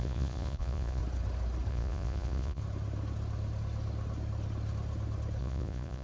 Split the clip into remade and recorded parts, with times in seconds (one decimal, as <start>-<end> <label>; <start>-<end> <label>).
0.0-1.0 remade; 1.0-1.7 recorded; 1.7-2.6 remade; 2.6-5.4 recorded; 5.4-6.0 remade